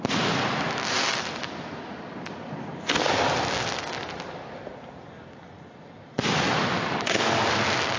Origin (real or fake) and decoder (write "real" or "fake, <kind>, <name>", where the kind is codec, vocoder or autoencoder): real